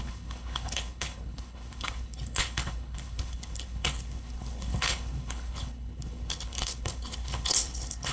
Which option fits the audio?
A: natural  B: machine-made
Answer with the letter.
B